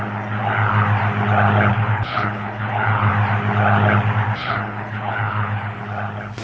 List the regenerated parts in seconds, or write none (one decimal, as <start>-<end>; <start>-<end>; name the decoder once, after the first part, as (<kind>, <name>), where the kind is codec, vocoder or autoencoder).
1.7-3.1 (codec, HILCodec); 4.4-5.8